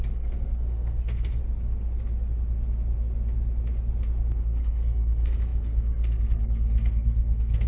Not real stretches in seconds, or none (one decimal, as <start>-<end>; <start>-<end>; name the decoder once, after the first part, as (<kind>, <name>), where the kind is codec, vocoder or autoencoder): 0.0-1.4 (codec, SNAC); 4.4-7.7